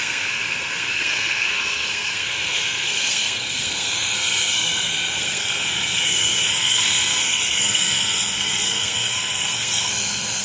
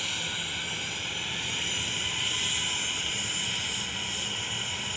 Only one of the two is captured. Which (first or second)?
second